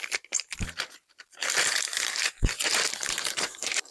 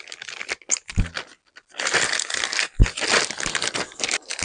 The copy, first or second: first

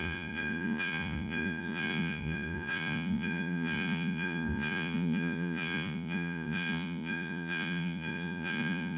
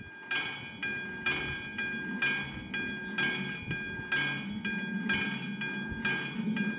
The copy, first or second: first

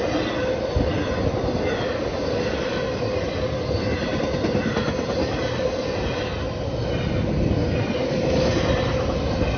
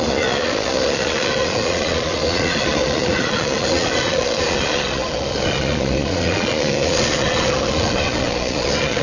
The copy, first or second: second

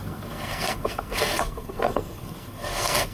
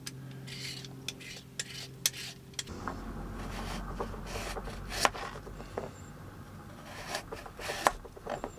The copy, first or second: first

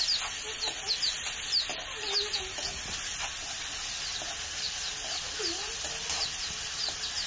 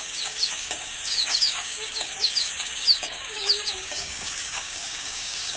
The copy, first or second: second